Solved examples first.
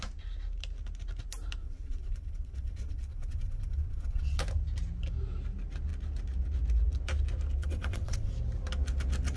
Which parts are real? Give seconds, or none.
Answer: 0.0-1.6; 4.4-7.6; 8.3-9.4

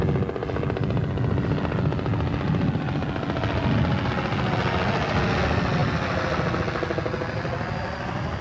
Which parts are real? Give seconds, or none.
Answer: 0.0-8.4

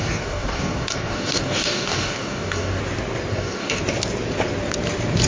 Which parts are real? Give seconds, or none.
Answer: 2.8-3.3; 3.8-5.3

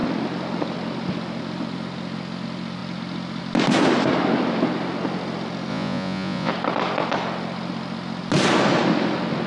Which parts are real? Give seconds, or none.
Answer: 0.0-5.7; 6.5-9.5

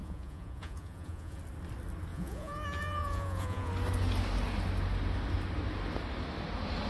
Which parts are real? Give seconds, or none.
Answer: 1.4-2.1; 3.7-6.9

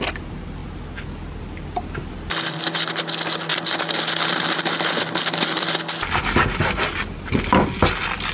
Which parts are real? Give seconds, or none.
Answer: 0.0-8.3